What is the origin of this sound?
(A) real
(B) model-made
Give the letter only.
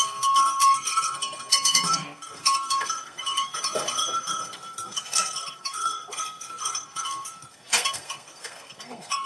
B